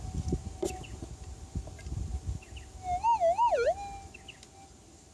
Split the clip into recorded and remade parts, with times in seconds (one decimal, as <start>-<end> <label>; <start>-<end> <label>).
0.0-5.1 recorded